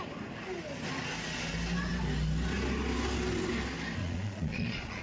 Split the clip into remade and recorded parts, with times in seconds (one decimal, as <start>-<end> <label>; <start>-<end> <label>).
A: 0.0-4.0 recorded; 4.0-5.0 remade